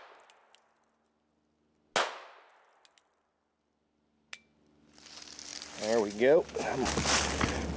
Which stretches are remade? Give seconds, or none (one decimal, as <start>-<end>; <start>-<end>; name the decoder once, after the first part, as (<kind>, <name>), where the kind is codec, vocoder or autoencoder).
none